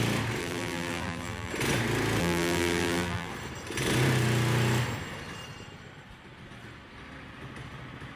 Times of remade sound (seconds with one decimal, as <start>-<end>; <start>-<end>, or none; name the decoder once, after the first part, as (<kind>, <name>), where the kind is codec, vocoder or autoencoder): 0.4-1.5 (vocoder, BigVGAN v2); 2.2-3.3